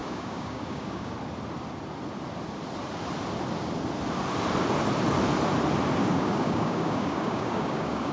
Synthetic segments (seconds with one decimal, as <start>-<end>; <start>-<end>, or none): 0.0-1.1; 6.0-8.1